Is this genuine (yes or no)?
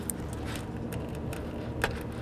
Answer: yes